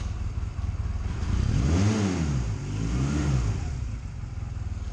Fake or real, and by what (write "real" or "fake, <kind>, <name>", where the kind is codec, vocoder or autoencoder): real